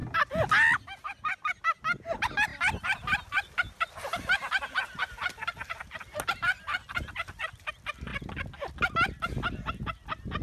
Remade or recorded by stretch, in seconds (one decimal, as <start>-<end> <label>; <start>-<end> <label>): 0.0-10.4 recorded